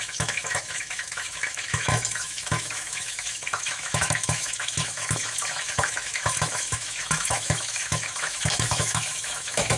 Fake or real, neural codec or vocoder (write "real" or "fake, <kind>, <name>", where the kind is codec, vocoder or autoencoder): fake, autoencoder, DAC-VAE